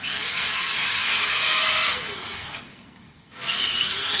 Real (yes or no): no